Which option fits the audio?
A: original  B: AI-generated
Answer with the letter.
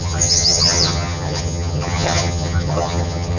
B